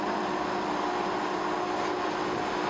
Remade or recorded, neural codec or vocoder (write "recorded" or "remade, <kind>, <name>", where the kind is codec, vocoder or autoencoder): recorded